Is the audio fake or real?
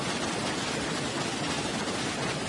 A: real